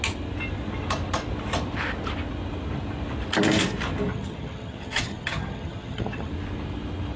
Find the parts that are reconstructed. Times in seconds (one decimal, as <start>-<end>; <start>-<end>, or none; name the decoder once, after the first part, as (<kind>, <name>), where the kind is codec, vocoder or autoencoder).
4.1-6.3 (vocoder, HiFi-GAN)